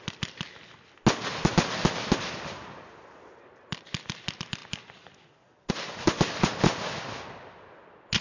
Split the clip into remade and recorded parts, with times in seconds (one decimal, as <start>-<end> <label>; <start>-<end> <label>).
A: 0.0-8.2 recorded

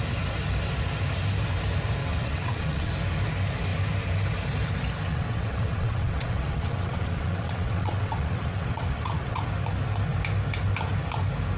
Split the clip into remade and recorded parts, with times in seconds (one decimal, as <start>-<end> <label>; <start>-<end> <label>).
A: 0.0-2.0 recorded; 2.0-2.9 remade; 2.9-5.1 recorded; 5.1-9.4 remade; 9.4-11.6 recorded

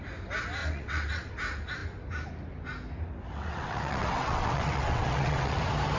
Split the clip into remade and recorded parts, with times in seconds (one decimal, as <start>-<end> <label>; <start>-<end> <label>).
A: 0.0-0.6 recorded; 0.6-1.3 remade; 1.3-3.3 recorded; 3.3-5.6 remade; 5.6-6.0 recorded

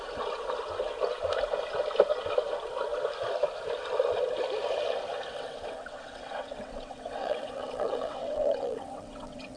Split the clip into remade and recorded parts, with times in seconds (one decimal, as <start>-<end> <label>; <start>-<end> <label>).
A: 0.0-5.3 recorded; 5.3-9.6 remade